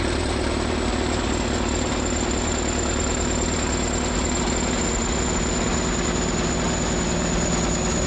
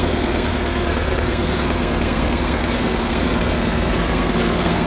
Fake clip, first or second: second